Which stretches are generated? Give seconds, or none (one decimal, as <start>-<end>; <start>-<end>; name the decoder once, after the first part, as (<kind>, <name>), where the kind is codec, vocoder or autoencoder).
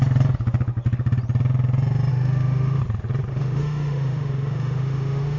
2.1-2.8 (autoencoder, DAC-VAE); 3.3-5.4